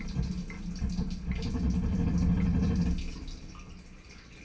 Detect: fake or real real